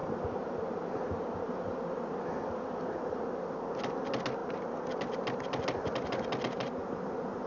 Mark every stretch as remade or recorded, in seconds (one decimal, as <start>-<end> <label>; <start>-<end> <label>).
0.0-7.5 recorded